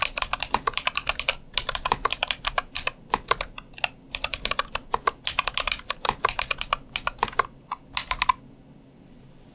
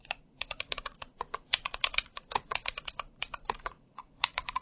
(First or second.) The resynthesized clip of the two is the second